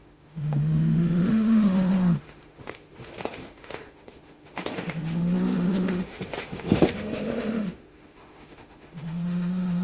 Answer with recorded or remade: remade